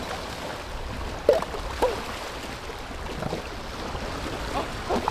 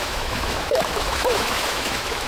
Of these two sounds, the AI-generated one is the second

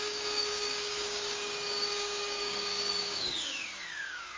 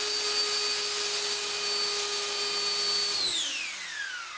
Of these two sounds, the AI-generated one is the first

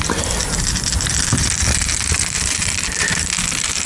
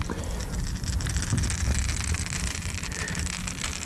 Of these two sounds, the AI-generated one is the first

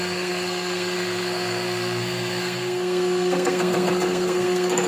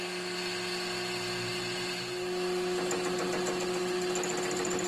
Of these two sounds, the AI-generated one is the first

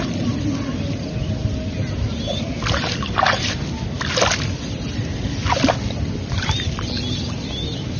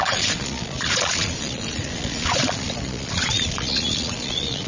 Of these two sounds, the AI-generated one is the second